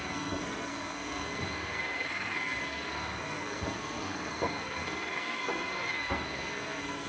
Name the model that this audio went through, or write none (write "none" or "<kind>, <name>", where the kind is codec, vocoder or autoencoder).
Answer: codec, SNAC